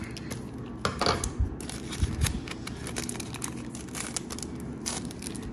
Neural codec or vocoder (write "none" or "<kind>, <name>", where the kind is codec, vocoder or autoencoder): none